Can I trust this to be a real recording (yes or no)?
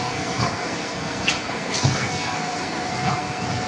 no